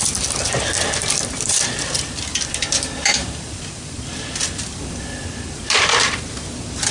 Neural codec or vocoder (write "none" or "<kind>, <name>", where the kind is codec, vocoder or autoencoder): vocoder, BigVGAN v2